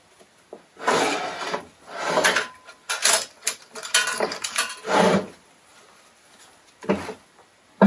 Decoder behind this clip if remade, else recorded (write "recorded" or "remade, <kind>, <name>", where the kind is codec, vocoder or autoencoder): recorded